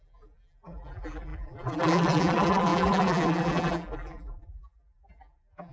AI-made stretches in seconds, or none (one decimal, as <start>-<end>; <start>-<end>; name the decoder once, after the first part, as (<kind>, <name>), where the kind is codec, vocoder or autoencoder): 0.0-5.7 (vocoder, BigVGAN v2)